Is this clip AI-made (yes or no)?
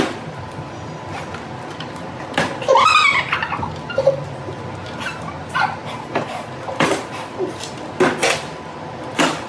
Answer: no